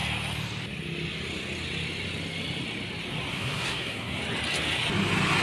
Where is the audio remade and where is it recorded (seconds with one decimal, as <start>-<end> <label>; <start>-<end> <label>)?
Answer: 0.0-3.3 recorded; 3.3-4.2 remade; 4.2-5.4 recorded